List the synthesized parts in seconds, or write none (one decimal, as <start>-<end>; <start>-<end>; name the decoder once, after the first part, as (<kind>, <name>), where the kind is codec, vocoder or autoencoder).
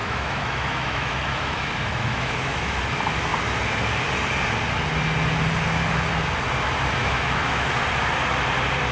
0.0-2.8 (autoencoder, DAC-VAE); 7.0-7.7